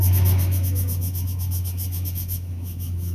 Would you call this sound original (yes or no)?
no